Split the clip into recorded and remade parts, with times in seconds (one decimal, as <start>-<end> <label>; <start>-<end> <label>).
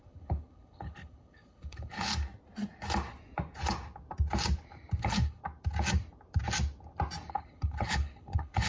0.0-2.1 remade; 2.1-5.0 recorded; 5.0-5.4 remade; 5.4-7.3 recorded; 7.3-8.7 remade